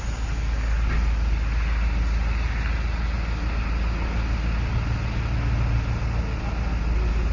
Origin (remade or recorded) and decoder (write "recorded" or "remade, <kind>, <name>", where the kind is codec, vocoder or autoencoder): recorded